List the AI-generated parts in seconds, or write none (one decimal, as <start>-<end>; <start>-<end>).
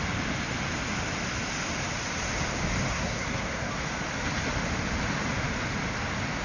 2.9-3.7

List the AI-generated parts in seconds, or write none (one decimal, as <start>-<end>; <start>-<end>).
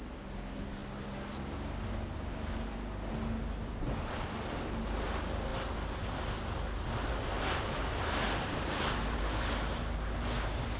none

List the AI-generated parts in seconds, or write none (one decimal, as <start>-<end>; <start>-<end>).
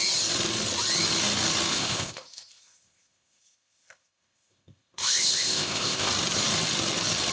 1.7-6.1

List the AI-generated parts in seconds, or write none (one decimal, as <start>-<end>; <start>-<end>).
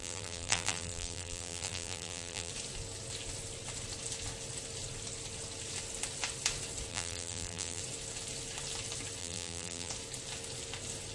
0.0-2.5; 6.9-7.8; 9.2-9.9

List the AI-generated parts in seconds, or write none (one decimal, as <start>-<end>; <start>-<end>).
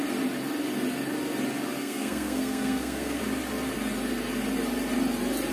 1.8-3.2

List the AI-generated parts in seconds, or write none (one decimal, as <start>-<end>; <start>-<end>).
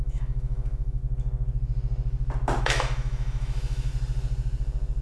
0.0-1.0; 2.6-3.9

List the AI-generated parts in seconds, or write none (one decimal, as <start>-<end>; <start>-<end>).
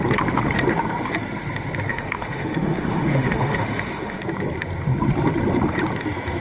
1.9-4.2